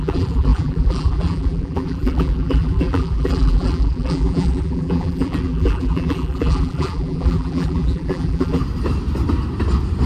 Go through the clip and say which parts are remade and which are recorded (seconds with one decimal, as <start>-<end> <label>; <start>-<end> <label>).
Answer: 0.0-8.6 remade; 8.6-10.1 recorded